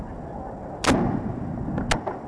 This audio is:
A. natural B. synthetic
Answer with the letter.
A